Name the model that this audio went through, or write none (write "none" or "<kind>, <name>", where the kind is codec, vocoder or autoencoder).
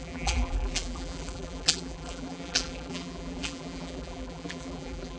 vocoder, BigVGAN v2